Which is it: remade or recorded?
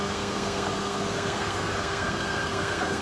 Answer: remade